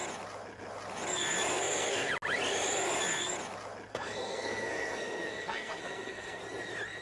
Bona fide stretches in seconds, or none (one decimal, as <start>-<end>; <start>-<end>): 0.0-1.5; 2.1-3.9; 6.4-7.0